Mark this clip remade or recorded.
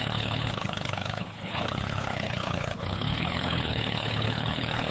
remade